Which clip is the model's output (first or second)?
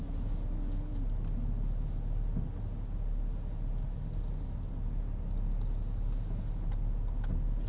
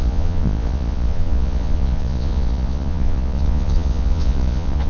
second